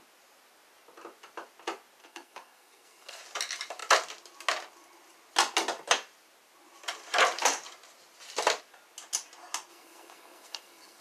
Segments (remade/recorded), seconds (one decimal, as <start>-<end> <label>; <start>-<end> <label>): 0.0-2.0 recorded; 2.0-3.2 remade; 3.2-9.7 recorded; 9.7-11.0 remade